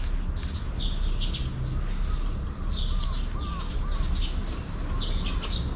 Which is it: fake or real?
real